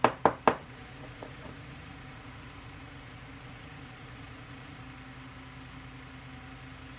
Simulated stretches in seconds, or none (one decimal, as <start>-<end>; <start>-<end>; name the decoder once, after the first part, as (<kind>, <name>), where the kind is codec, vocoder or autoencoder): 0.6-4.8 (vocoder, Vocos)